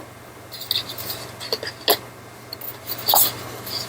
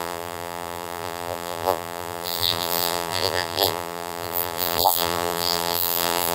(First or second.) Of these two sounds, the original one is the first